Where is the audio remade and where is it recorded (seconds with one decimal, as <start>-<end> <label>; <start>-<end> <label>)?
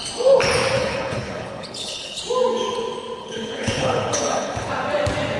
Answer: 0.0-0.8 recorded; 0.8-2.2 remade; 2.2-3.2 recorded; 3.2-4.7 remade; 4.7-5.4 recorded